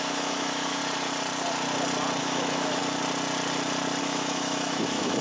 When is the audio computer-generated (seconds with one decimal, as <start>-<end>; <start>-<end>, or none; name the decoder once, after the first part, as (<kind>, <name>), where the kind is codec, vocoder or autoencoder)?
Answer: 0.0-0.8 (autoencoder, DAC-VAE); 2.2-2.8; 4.0-5.2

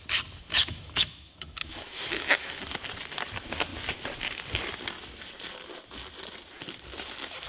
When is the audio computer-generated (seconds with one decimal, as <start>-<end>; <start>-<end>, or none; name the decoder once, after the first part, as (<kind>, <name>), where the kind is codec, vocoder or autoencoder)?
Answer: 0.5-2.6 (autoencoder, DAC-VAE)

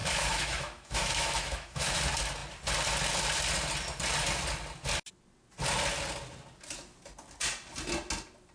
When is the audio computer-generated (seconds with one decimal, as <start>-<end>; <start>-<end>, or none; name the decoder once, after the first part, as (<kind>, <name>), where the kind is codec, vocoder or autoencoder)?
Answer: 0.0-2.0 (autoencoder, DAC-VAE)

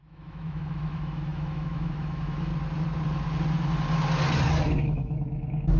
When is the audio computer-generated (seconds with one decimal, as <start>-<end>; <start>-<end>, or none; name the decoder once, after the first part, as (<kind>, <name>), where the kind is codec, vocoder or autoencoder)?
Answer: 0.0-2.5 (autoencoder, DAC-VAE); 4.8-5.8

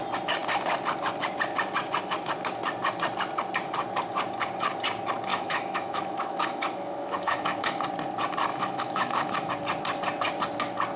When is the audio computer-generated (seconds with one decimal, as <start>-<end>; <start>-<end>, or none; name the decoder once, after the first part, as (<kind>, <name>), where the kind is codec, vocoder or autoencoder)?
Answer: 5.3-7.8 (autoencoder, DAC-VAE); 8.5-9.5

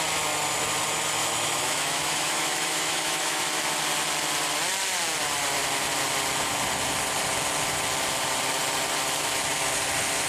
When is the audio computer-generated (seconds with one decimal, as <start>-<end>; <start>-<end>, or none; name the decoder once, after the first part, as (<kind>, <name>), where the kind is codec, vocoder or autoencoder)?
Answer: 1.2-3.4 (autoencoder, DAC-VAE)

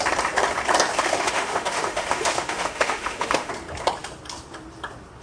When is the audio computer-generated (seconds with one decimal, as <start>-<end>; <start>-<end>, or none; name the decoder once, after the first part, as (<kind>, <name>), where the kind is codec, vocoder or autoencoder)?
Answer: 1.0-3.5 (autoencoder, DAC-VAE)